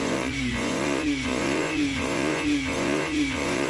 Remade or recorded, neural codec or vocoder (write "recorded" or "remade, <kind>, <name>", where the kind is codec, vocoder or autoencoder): remade, vocoder, Vocos